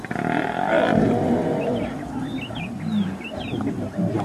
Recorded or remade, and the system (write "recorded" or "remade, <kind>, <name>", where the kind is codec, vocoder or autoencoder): recorded